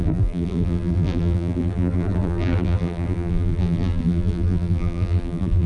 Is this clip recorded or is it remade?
remade